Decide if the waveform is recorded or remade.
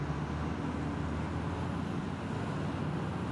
recorded